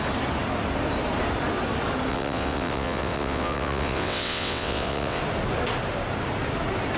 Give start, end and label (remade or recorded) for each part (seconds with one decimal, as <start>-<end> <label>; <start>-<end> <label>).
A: 0.0-2.1 recorded; 2.1-5.2 remade; 5.2-7.0 recorded